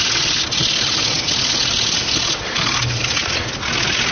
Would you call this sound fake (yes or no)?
no